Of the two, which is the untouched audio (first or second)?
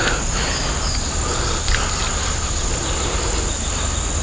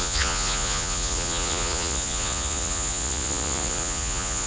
first